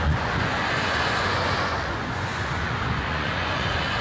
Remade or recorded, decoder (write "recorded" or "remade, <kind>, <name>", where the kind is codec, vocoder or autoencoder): remade, vocoder, Vocos